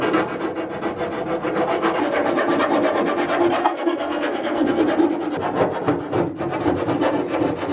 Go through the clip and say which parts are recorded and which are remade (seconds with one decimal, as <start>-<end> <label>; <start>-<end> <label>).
0.0-3.6 recorded; 3.6-4.8 remade; 4.8-7.7 recorded